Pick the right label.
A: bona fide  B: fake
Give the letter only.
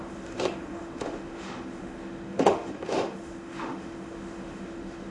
B